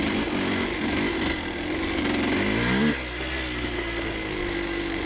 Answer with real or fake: real